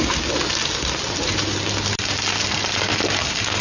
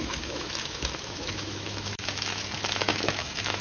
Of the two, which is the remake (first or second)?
second